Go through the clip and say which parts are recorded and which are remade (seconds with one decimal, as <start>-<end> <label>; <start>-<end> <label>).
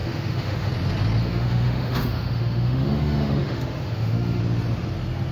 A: 0.0-0.7 remade; 0.7-1.2 recorded; 1.2-4.4 remade; 4.4-5.3 recorded